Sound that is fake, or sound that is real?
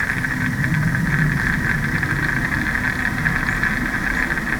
real